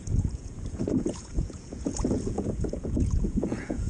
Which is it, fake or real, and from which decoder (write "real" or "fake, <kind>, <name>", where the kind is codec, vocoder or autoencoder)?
fake, vocoder, Vocos